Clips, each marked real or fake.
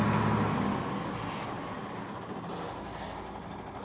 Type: real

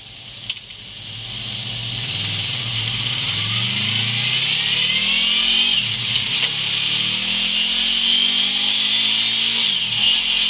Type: real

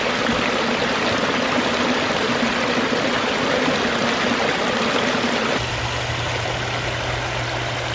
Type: real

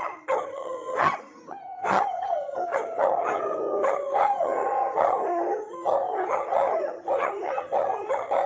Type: fake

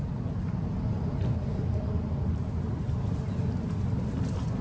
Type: real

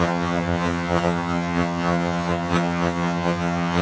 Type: fake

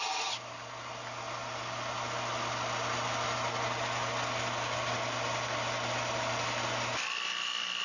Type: real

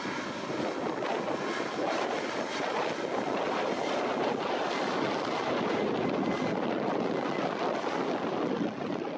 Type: real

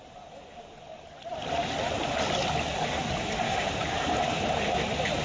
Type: real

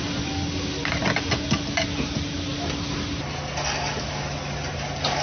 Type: real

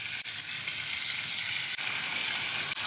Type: real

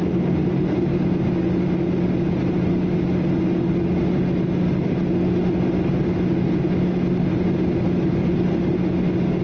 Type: real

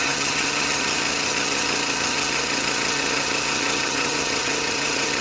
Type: fake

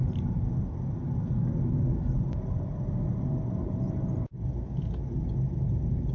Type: real